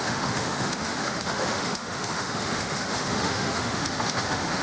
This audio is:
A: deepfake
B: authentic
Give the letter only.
A